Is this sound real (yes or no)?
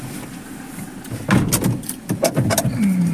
yes